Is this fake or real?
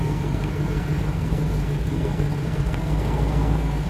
fake